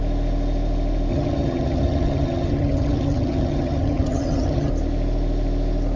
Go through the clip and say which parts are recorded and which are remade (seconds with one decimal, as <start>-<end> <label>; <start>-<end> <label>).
0.0-1.1 recorded; 1.1-4.7 remade; 4.7-6.0 recorded